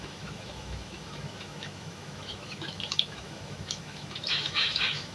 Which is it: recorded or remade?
remade